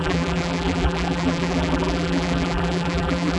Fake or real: fake